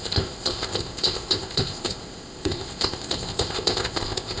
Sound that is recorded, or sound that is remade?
remade